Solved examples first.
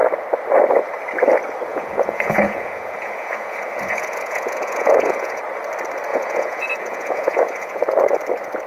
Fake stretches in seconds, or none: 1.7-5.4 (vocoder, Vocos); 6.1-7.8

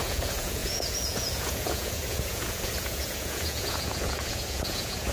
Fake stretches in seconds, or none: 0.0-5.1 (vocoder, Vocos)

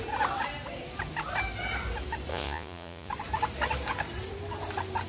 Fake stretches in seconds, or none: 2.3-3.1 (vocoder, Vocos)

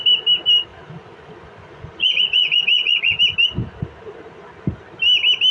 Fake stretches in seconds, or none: 0.7-3.2 (vocoder, Vocos)

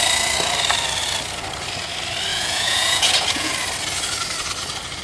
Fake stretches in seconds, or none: 2.3-3.5 (vocoder, Vocos)